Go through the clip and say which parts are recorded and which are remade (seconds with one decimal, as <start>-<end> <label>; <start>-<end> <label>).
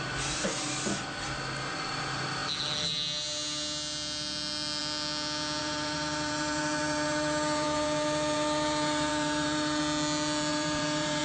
0.0-5.6 recorded; 5.6-9.8 remade; 9.8-10.5 recorded; 10.5-11.2 remade